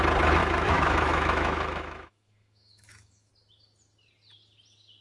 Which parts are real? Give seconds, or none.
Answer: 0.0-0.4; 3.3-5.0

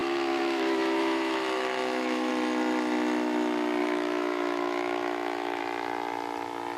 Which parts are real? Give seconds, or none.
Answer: 2.3-3.8; 5.6-6.8

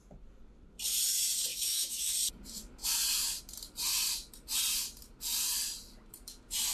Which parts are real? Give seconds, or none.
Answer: 0.0-1.5; 2.1-6.7

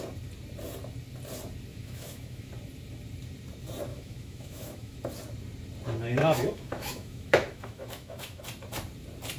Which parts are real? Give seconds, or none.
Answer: 0.0-1.7; 2.5-3.9; 5.0-6.2; 8.4-9.4